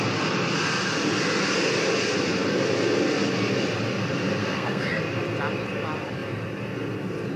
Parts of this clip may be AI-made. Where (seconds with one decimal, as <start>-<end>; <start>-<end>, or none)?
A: 4.4-5.0